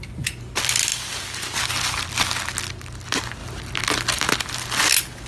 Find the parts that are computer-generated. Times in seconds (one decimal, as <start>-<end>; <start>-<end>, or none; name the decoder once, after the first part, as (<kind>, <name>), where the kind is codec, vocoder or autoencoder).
none